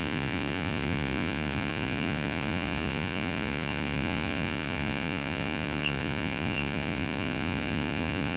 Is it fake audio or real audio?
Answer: fake